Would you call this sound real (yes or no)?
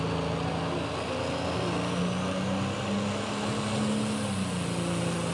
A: yes